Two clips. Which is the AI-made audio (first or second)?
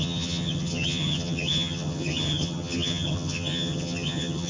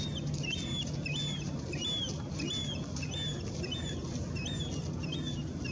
first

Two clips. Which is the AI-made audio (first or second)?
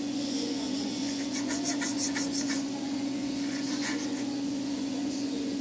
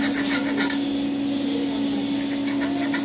first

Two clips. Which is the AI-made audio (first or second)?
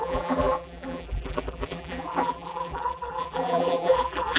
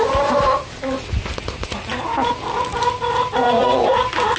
first